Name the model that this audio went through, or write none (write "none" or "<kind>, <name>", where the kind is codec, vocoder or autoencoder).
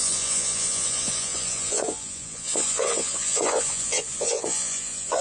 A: vocoder, Vocos